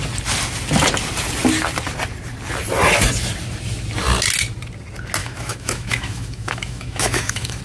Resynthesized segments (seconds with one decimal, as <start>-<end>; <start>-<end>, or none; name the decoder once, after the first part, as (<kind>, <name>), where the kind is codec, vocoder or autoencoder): 5.2-7.6 (autoencoder, DAC-VAE)